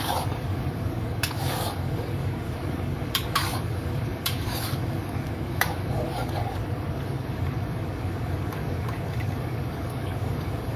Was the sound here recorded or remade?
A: remade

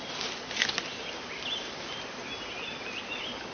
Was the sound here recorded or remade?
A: recorded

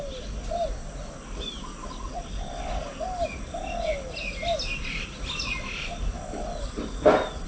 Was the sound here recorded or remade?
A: recorded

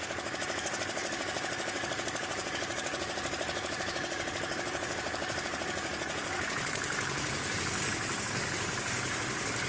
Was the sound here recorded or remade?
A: remade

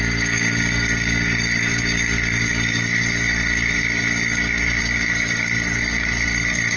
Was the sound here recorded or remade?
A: remade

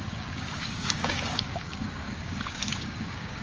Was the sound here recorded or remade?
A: remade